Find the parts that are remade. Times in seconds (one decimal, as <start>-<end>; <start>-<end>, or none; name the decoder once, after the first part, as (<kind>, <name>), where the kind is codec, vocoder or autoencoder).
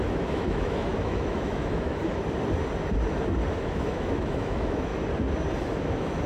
0.0-2.0 (autoencoder, DAC-VAE); 3.6-4.9; 5.8-6.3